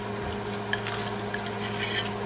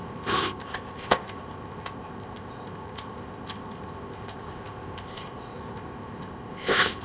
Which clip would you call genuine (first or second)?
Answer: first